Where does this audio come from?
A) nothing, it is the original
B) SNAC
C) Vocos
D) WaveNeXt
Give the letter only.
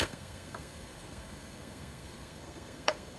B